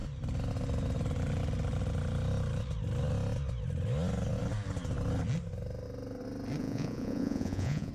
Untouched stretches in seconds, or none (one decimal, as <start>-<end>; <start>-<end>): 0.0-6.6

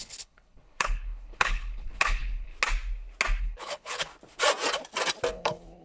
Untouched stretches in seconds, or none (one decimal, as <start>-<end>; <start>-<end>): 2.5-3.4; 4.1-5.3

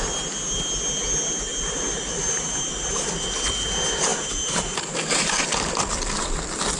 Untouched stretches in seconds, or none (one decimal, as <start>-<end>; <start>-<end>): 0.0-1.5; 3.1-4.1; 5.9-6.8

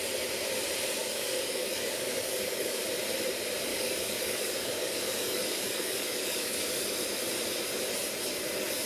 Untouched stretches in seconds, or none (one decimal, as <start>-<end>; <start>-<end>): 0.0-1.0; 2.8-3.7; 6.6-8.9

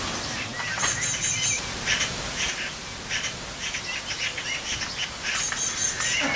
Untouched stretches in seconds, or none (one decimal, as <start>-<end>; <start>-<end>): 0.0-6.4